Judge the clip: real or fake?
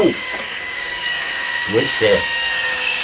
fake